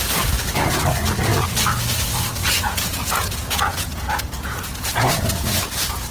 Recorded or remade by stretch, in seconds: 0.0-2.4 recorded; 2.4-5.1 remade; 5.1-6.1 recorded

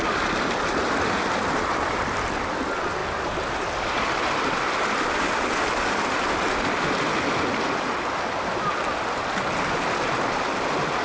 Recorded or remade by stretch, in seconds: 0.0-11.0 recorded

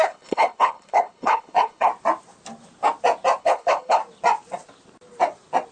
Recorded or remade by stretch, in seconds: 0.0-1.9 remade; 1.9-3.4 recorded; 3.4-4.0 remade; 4.0-5.7 recorded

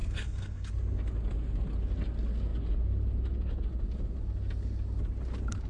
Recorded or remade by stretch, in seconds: 0.0-0.7 remade; 0.7-5.7 recorded